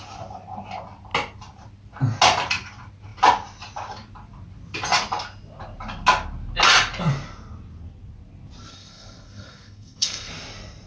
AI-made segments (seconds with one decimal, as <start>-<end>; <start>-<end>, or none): 8.7-10.3